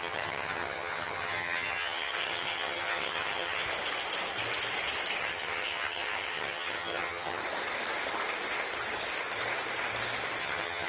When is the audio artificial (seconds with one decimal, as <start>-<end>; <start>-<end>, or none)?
0.0-3.6; 5.2-7.4; 10.4-10.9